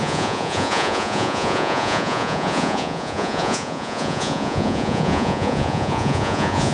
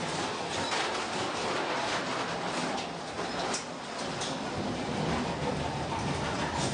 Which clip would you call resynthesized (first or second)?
first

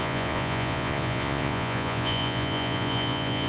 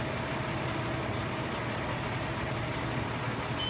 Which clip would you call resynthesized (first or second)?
first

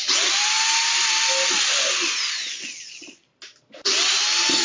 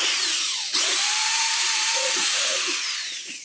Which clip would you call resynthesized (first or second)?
second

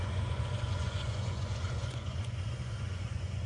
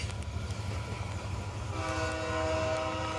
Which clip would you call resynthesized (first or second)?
first